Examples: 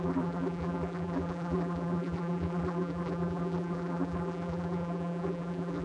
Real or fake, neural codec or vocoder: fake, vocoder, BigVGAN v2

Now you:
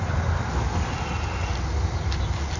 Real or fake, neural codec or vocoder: real